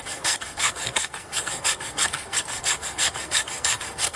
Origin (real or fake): fake